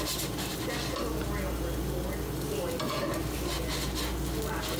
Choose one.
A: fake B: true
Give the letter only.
B